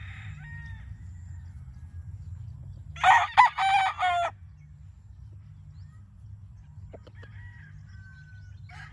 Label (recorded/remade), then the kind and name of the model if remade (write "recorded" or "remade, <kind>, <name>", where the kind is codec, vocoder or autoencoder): recorded